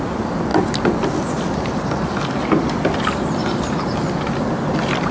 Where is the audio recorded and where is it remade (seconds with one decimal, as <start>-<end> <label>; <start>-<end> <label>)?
0.0-5.1 recorded